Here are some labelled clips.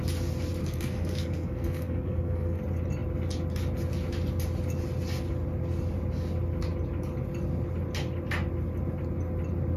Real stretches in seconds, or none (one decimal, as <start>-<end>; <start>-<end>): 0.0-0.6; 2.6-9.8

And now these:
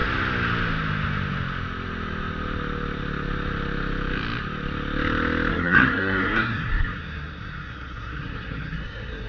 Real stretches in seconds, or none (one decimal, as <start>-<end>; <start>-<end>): 0.0-5.5

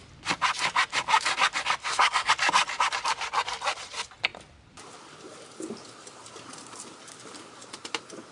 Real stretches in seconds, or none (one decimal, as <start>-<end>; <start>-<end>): 0.0-1.8; 2.3-8.3

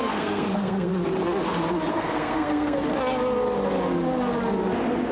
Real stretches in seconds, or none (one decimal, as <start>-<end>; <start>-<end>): 0.9-1.9; 2.8-5.1

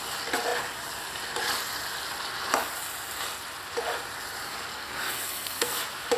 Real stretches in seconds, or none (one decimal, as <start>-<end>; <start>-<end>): 0.0-4.7; 5.8-6.2

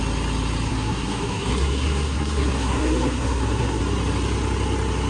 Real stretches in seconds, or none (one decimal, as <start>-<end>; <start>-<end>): 0.0-0.7; 3.8-5.1